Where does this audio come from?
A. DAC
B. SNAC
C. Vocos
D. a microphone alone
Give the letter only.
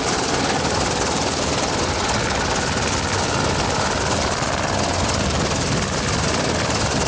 D